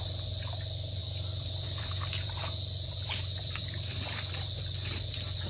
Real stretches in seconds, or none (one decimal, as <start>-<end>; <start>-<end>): 0.0-1.0; 4.3-5.5